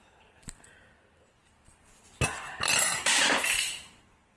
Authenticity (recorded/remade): recorded